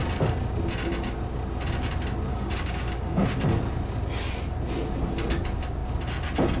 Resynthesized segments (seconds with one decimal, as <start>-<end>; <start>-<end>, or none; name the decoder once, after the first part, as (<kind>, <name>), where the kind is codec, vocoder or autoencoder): 2.3-3.5 (codec, DAC)